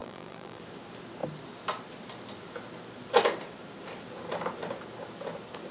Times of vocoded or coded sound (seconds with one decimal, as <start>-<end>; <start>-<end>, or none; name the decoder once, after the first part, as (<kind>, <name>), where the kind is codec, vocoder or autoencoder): 0.0-0.6 (vocoder, BigVGAN v2)